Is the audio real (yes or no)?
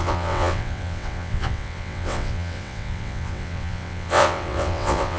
no